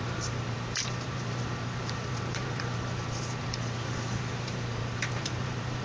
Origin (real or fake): fake